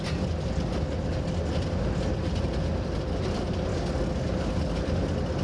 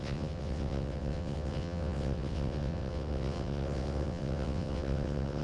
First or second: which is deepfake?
second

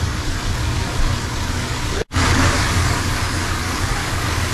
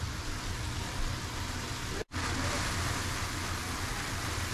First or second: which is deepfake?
first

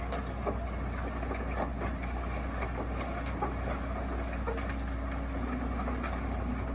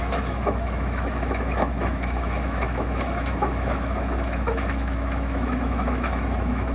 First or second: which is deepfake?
second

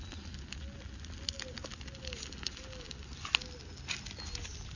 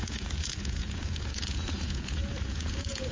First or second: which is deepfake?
second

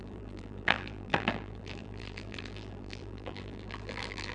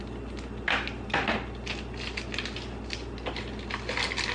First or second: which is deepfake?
first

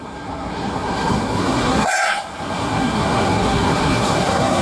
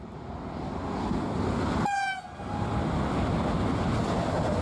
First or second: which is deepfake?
first